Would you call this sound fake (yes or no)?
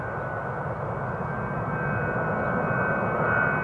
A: no